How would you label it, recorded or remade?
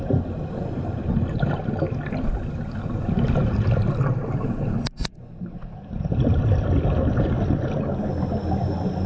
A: recorded